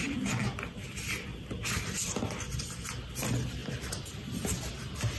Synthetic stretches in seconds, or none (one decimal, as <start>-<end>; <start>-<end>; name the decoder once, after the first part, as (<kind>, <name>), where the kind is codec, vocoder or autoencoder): none